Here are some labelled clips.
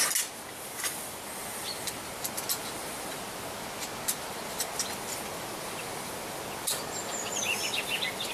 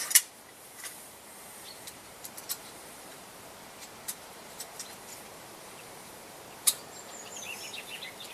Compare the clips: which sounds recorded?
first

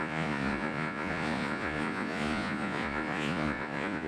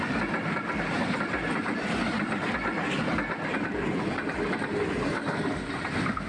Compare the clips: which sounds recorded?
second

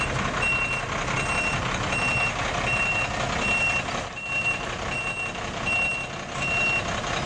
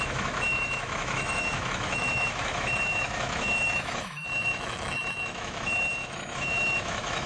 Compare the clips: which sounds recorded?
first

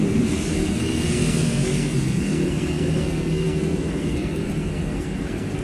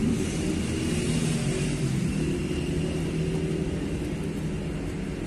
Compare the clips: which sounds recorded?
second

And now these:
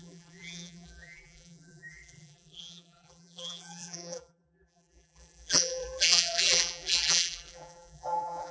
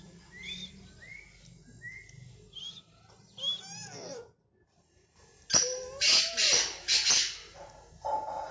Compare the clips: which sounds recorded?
second